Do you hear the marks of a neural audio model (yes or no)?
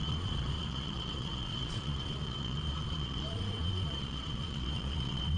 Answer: yes